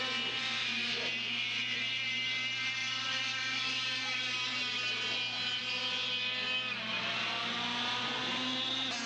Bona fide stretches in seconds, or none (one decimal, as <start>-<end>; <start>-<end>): 0.0-0.4; 1.6-2.8; 3.9-9.1